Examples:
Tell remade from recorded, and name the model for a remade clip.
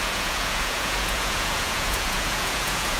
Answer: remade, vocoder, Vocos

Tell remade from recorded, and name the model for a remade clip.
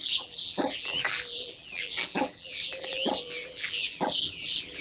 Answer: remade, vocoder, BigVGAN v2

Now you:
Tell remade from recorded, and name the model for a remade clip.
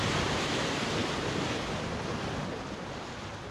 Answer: recorded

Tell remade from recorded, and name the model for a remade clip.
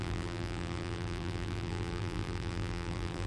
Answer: remade, vocoder, BigVGAN v2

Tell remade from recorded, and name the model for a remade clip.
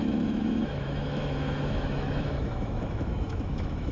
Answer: remade, autoencoder, DAC-VAE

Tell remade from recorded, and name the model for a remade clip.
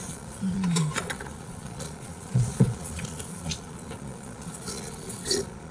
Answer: remade, vocoder, Vocos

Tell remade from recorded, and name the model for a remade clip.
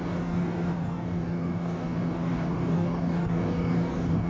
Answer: remade, codec, DAC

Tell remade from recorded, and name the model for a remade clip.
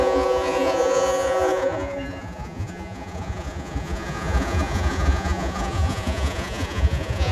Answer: remade, vocoder, Vocos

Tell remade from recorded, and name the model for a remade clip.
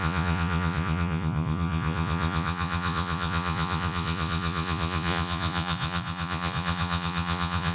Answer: remade, vocoder, Vocos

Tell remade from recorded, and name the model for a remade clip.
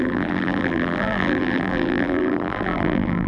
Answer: remade, vocoder, BigVGAN v2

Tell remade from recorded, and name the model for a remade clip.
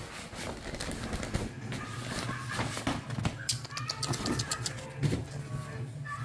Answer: recorded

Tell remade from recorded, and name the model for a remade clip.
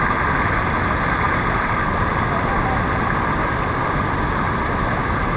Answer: recorded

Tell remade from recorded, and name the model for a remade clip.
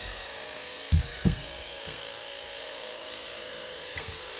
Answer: remade, codec, SNAC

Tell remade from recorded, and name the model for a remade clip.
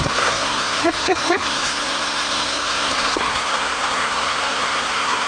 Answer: remade, codec, SNAC